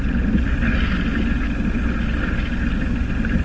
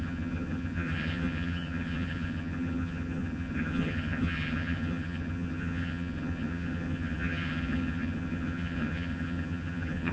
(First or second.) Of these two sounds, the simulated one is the second